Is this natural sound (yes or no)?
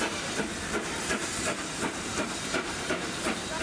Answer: no